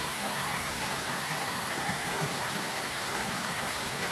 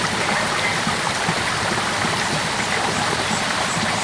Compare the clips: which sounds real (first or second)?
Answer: second